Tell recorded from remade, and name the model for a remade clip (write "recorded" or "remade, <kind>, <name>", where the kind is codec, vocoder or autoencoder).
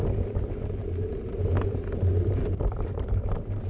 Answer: remade, vocoder, BigVGAN v2